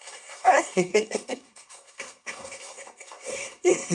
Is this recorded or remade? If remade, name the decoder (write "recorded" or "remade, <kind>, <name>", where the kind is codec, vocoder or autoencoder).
remade, codec, SNAC